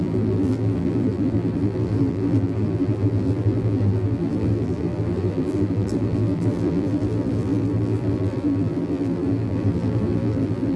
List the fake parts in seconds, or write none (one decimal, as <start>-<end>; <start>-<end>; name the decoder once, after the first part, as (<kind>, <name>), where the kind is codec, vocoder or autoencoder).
0.0-10.8 (vocoder, BigVGAN v2)